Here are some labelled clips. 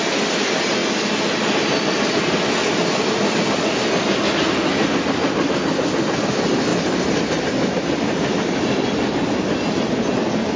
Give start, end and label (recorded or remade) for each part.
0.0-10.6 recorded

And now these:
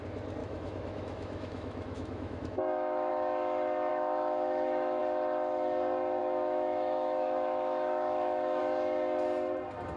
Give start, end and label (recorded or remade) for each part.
0.0-0.4 recorded; 0.4-3.1 remade; 3.1-3.9 recorded; 3.9-5.0 remade; 5.0-6.2 recorded; 6.2-8.6 remade; 8.6-10.0 recorded

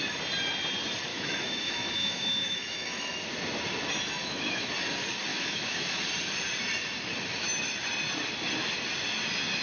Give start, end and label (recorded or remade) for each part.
0.0-1.1 recorded; 1.1-3.3 remade; 3.3-4.2 recorded; 4.2-4.7 remade; 4.7-5.3 recorded; 5.3-6.0 remade; 6.0-9.6 recorded

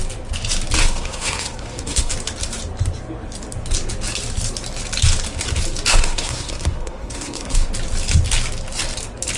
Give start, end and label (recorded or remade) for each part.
0.0-0.8 recorded; 0.8-2.1 remade; 2.1-5.9 recorded; 5.9-7.7 remade; 7.7-9.4 recorded

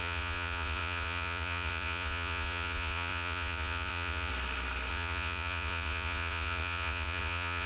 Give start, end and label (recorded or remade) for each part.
0.0-4.3 remade; 4.3-4.9 recorded; 4.9-7.7 remade

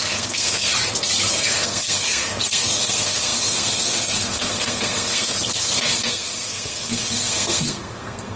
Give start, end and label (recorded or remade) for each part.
0.0-0.7 remade; 0.7-1.3 recorded; 1.3-8.4 remade